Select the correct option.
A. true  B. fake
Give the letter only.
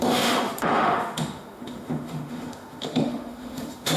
B